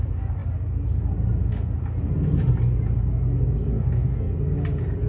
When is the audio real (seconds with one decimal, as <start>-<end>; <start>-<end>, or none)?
0.0-3.7; 4.3-5.1